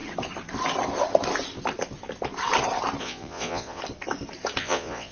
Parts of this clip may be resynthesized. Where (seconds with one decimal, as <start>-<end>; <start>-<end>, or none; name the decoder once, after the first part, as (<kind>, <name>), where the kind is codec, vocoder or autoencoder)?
3.0-3.8 (vocoder, Vocos); 4.6-5.1